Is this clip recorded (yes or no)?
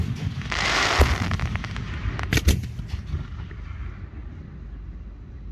yes